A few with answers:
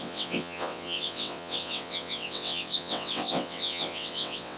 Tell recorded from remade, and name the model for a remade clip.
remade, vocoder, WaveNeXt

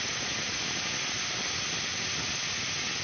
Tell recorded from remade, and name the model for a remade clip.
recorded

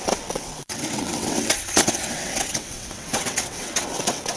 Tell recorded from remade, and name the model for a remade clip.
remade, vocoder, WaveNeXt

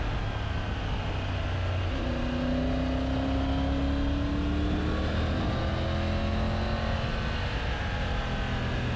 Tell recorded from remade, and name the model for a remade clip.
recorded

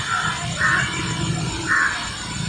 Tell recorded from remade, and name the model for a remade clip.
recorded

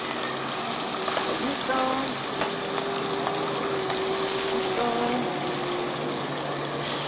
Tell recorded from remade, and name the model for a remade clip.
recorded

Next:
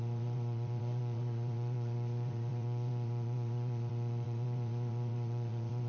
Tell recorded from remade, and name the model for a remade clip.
remade, vocoder, WaveNeXt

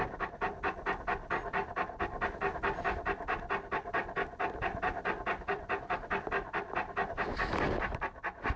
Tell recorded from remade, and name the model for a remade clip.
recorded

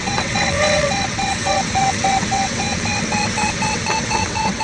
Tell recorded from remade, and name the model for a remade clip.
remade, vocoder, WaveNeXt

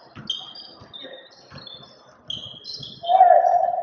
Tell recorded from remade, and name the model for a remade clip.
recorded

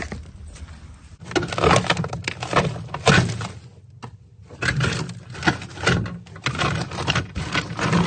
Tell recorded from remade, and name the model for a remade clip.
recorded